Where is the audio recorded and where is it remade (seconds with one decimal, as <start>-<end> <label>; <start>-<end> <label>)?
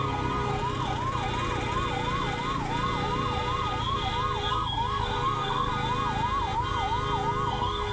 0.0-0.5 remade; 0.5-4.5 recorded; 4.5-5.7 remade; 5.7-7.5 recorded; 7.5-7.9 remade